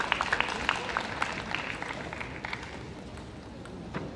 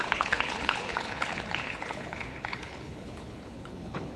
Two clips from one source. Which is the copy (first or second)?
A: second